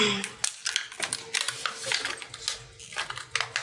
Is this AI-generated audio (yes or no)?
no